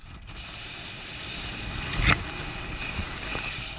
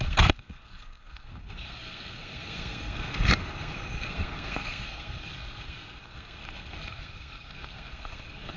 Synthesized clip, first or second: second